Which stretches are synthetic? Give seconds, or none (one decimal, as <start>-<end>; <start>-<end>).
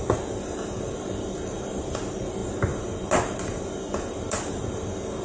none